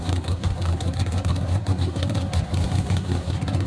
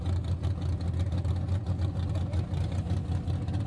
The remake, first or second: first